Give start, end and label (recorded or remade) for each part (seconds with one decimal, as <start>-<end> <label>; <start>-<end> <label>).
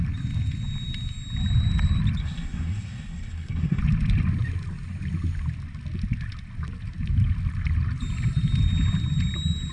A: 0.0-2.2 recorded; 2.2-3.8 remade; 3.8-9.7 recorded